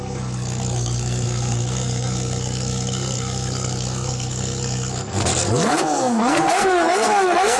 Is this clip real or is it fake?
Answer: fake